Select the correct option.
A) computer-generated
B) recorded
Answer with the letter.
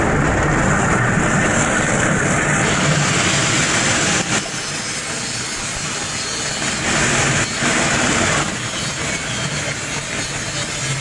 B